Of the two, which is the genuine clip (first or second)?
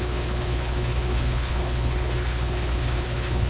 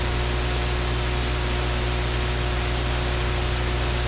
second